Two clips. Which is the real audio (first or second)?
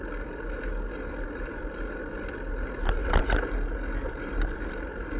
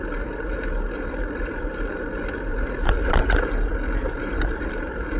first